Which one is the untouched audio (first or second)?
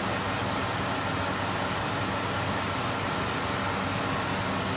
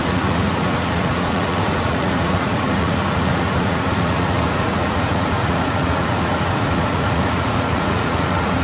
first